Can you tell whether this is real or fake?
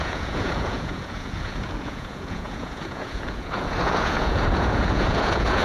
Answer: fake